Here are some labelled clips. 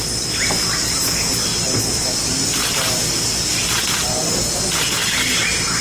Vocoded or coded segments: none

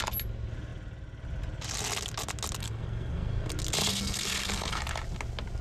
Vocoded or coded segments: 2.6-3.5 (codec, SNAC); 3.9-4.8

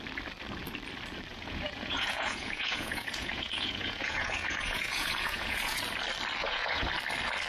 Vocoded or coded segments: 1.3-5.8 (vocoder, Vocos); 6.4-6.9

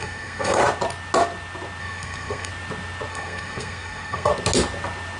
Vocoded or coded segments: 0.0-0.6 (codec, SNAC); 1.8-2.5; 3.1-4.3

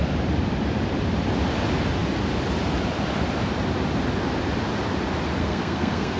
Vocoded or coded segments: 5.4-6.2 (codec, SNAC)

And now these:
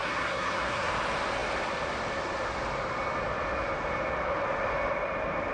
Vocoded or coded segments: 0.0-0.9 (codec, SNAC)

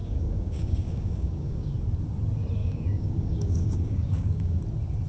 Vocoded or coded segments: 0.0-1.7 (codec, DAC); 2.6-4.6